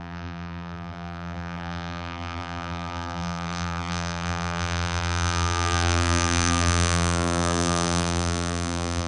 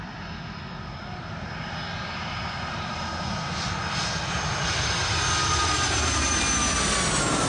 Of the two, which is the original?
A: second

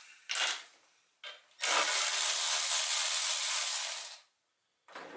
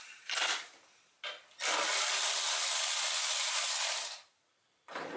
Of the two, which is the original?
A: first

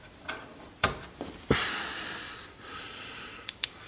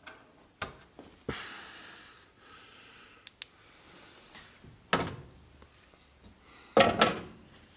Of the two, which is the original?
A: second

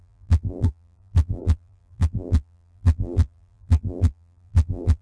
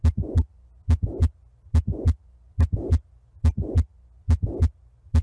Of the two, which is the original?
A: second